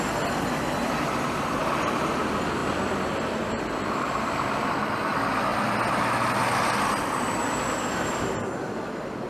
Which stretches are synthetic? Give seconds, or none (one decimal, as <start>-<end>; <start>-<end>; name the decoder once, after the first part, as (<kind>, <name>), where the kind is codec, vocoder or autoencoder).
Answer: none